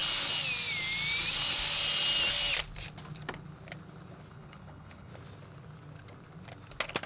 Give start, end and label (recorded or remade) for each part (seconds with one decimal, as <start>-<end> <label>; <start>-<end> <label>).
0.0-4.3 recorded; 4.3-5.1 remade; 5.1-7.1 recorded

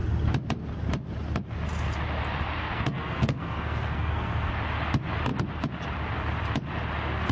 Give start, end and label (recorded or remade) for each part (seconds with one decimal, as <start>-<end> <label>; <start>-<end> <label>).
0.0-2.6 recorded; 2.6-4.5 remade; 4.5-7.3 recorded

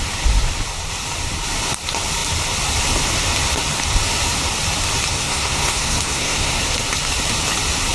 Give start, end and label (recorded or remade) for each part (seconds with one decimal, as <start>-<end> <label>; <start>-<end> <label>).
0.0-5.1 recorded; 5.1-6.6 remade; 6.6-7.9 recorded